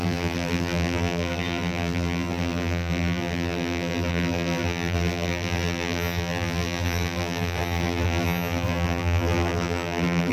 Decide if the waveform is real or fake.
fake